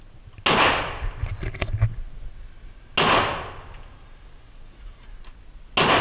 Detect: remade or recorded recorded